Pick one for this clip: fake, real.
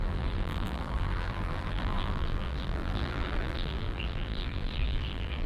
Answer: fake